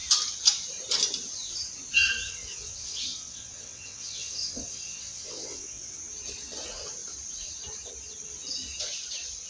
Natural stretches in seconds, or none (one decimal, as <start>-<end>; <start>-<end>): 0.0-2.2; 6.0-9.5